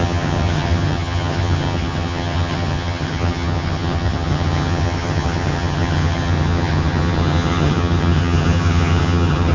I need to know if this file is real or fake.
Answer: fake